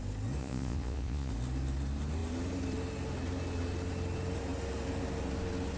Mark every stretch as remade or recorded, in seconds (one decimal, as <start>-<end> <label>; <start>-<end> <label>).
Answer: 0.0-0.4 recorded; 0.4-1.3 remade; 1.3-5.8 recorded